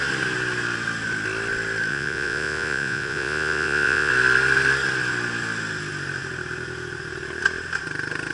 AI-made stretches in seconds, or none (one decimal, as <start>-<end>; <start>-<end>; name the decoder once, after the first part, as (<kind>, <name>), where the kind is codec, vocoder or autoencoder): 1.9-4.1 (vocoder, Vocos)